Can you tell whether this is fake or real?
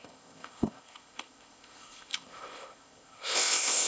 fake